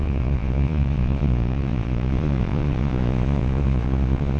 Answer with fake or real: fake